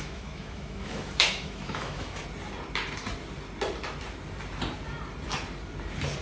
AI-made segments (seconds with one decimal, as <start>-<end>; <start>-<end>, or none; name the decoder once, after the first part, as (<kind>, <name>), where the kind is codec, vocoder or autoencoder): 0.0-2.2 (autoencoder, DAC-VAE)